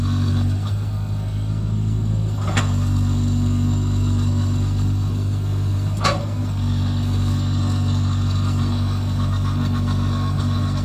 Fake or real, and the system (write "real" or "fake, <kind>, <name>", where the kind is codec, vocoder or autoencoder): fake, codec, SNAC